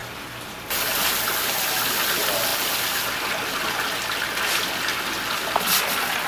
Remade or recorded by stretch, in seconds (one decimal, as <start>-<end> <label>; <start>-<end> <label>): 0.0-6.3 recorded